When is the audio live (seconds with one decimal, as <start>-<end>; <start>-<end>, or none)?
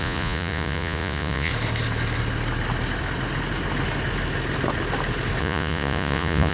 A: 1.5-5.4